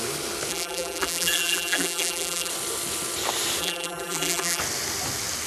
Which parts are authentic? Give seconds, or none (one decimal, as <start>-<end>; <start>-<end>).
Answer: 0.0-0.5; 2.5-3.6; 4.6-5.5